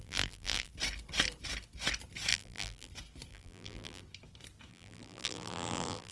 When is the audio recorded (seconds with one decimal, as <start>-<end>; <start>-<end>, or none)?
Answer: 0.7-2.3; 2.9-3.3; 4.0-4.7